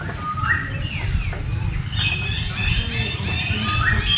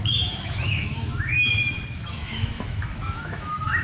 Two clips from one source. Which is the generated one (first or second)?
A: second